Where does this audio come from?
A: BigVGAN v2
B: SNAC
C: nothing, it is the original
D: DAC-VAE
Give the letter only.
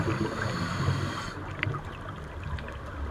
C